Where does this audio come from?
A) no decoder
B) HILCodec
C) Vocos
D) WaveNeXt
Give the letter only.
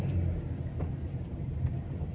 A